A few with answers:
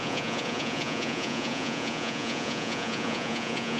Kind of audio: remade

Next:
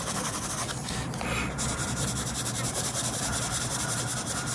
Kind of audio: remade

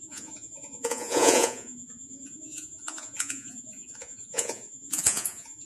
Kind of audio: remade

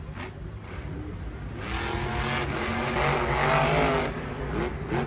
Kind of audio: recorded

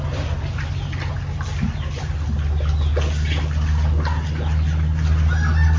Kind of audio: recorded